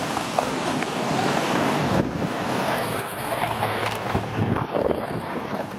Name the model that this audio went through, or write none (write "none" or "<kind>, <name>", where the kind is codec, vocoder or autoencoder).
codec, DAC